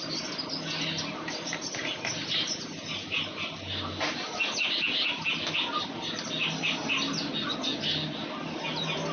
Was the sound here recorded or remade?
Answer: recorded